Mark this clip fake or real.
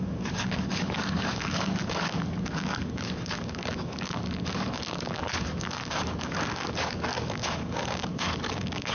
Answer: fake